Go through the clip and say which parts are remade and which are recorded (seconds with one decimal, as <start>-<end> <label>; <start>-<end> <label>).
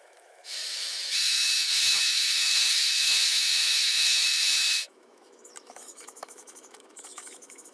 0.0-7.7 remade